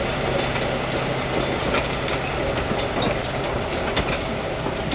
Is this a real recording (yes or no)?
yes